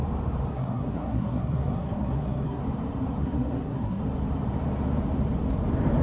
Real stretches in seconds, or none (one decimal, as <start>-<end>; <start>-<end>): 0.0-0.5; 2.6-3.2; 4.0-6.0